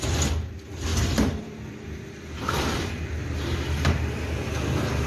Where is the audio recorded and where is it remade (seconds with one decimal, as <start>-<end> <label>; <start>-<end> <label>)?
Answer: 0.0-0.9 recorded; 0.9-3.0 remade; 3.0-5.1 recorded